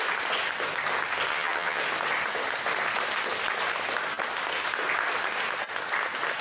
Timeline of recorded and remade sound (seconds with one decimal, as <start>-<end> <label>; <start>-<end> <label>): 0.0-1.3 recorded; 1.3-1.8 remade; 1.8-6.4 recorded